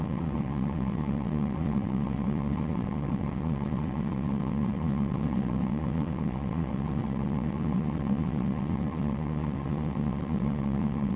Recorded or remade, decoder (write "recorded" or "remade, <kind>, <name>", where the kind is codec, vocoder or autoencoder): remade, vocoder, WaveNeXt